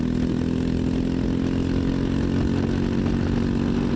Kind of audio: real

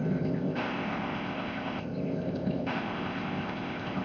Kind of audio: fake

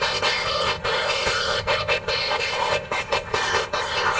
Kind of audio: fake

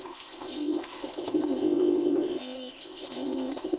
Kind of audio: fake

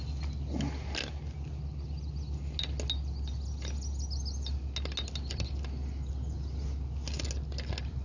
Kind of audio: real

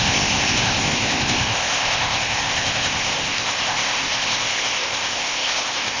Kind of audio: fake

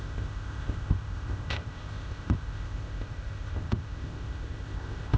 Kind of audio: fake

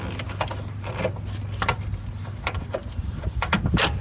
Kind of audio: real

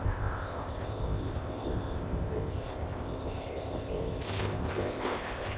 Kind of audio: fake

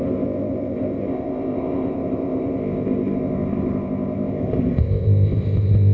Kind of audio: fake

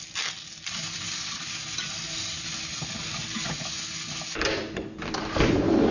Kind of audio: real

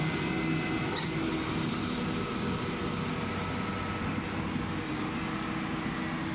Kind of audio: real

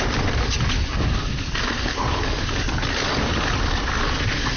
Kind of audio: real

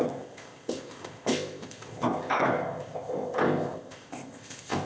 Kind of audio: fake